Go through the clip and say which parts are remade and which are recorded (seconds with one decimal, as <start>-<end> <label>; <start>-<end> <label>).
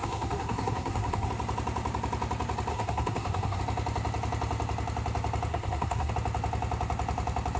0.0-1.3 remade; 1.3-2.7 recorded; 2.7-3.6 remade; 3.6-5.5 recorded; 5.5-6.1 remade; 6.1-7.6 recorded